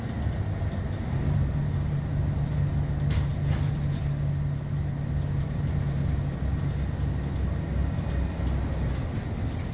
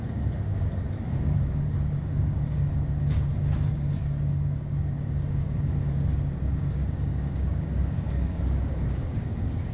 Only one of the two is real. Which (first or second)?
first